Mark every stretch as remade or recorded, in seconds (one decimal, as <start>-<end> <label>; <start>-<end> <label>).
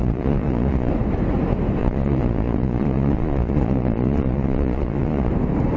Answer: 0.0-0.9 remade; 0.9-1.8 recorded; 1.8-5.3 remade; 5.3-5.8 recorded